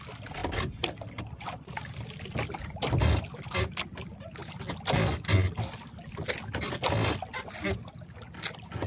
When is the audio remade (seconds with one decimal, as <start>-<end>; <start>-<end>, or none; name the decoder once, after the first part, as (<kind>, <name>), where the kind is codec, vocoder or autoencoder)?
none